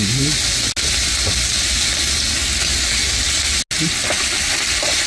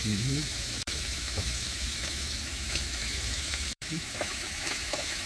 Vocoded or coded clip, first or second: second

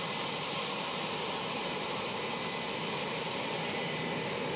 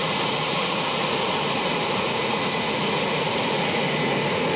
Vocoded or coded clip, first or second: second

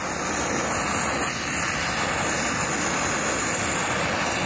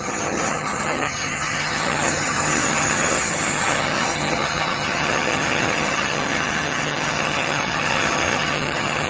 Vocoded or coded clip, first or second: second